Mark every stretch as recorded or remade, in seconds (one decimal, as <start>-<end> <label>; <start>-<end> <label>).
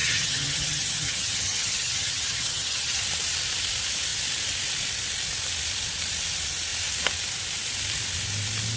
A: 0.0-3.0 remade; 3.0-8.8 recorded